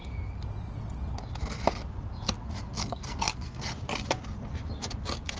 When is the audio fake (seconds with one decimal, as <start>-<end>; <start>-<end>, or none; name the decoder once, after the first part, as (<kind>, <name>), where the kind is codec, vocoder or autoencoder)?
2.8-3.6 (codec, SNAC)